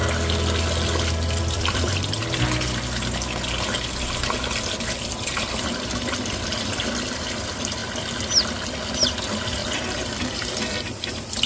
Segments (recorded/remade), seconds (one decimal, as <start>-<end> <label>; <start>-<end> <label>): 0.0-1.4 recorded; 1.4-1.9 remade; 1.9-5.0 recorded; 5.0-7.8 remade; 7.8-8.9 recorded; 8.9-11.5 remade